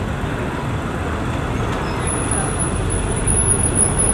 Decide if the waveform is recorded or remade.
recorded